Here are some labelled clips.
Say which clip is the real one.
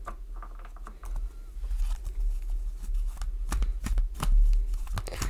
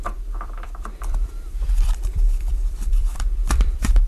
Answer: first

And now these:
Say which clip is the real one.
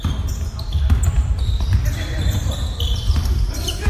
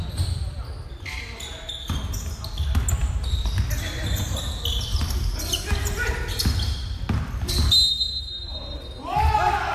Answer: second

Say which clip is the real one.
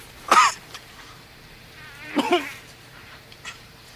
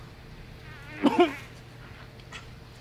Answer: second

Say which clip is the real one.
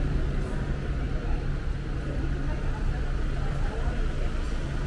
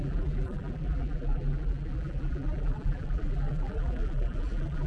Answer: first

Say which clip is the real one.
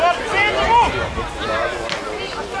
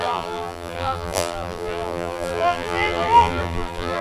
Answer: first